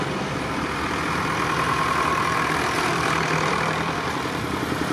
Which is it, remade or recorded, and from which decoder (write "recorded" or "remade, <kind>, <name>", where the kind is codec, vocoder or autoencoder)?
remade, vocoder, BigVGAN v2